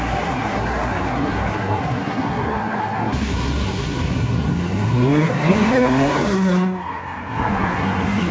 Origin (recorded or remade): remade